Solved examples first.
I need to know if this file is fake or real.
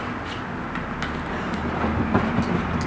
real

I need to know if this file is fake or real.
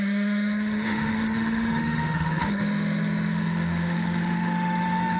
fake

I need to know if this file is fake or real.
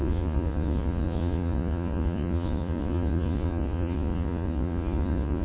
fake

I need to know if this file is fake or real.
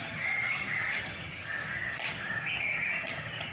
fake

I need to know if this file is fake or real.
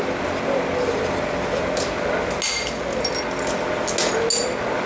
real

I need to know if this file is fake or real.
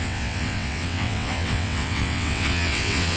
fake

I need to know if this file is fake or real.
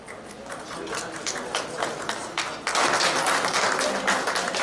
real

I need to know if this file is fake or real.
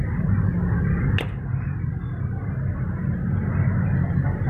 real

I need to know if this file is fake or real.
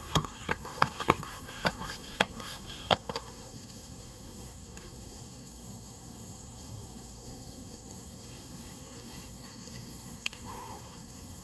fake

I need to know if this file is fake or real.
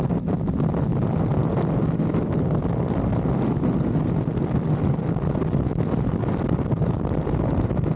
real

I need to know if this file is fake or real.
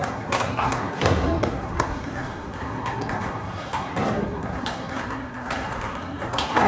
fake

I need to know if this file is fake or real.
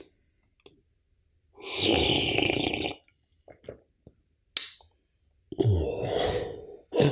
real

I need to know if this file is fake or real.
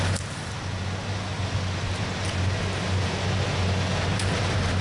real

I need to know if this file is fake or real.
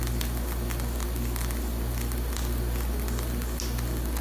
real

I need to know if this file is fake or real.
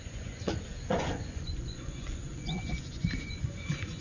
fake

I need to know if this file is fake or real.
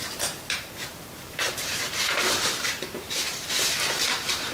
fake